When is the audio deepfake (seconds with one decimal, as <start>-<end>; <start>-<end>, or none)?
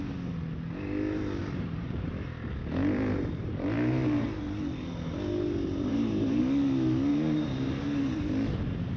1.4-2.1; 2.8-4.4; 5.9-6.4; 7.1-7.8